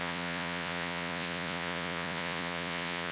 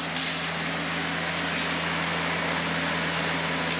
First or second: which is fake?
first